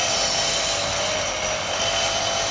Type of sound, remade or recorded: recorded